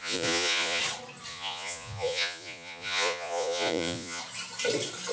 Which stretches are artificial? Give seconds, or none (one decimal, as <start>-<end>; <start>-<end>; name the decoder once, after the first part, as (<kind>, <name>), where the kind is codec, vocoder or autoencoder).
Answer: 0.0-0.8 (vocoder, Vocos); 1.3-4.2